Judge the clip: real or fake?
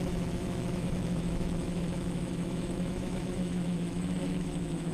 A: fake